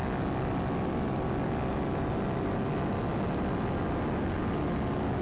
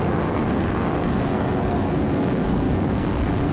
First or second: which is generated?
second